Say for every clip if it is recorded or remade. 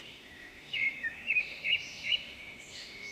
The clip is remade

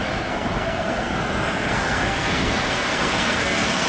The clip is remade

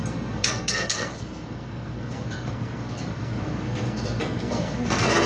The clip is remade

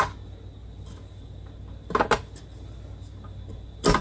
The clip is recorded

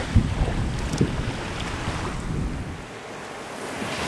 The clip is recorded